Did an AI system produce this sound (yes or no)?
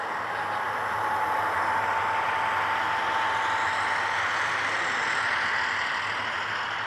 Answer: no